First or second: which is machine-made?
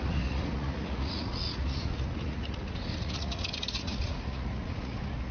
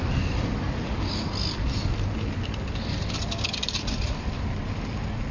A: first